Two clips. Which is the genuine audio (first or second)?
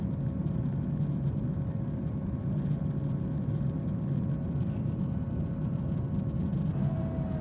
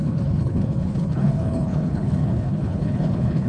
first